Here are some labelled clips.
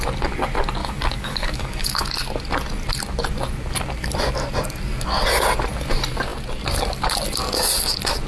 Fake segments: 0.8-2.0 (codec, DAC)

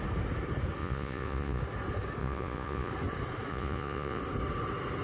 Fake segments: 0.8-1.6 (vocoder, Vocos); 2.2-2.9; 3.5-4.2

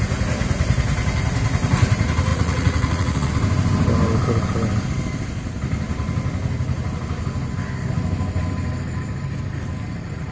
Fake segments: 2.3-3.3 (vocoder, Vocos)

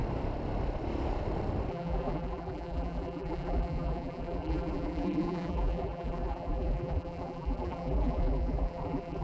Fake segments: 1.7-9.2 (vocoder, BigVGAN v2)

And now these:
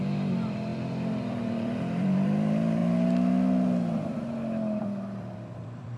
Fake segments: 0.0-2.8 (vocoder, BigVGAN v2); 4.8-6.0